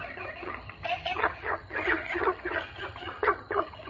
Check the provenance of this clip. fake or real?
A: fake